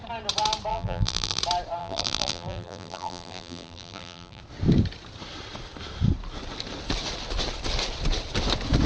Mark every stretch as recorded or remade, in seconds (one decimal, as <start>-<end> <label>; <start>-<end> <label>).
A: 0.0-0.7 recorded; 0.7-1.4 remade; 1.4-1.8 recorded; 1.8-4.4 remade; 4.4-8.9 recorded